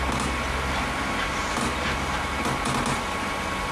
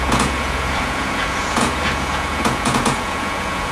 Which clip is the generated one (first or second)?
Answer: second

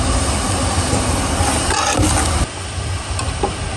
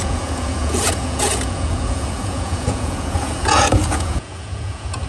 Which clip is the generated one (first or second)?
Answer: second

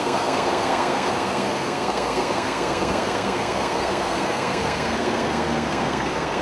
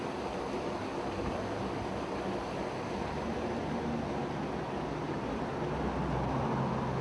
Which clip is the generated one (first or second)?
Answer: first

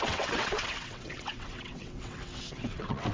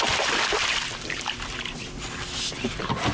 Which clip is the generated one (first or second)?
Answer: first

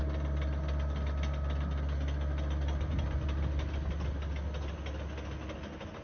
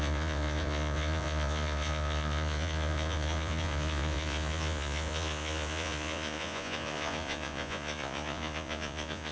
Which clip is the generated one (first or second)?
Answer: second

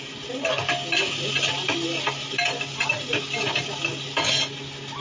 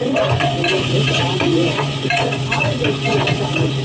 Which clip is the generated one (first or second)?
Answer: second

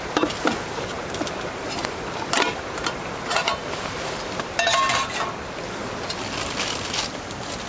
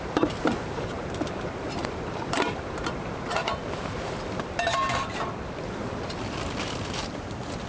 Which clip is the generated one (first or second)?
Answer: second